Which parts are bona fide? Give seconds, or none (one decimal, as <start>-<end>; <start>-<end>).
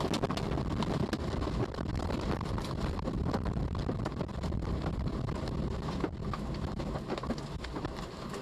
0.0-1.9; 2.5-8.4